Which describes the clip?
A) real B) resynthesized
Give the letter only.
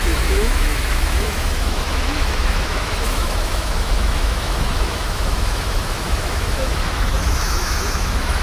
B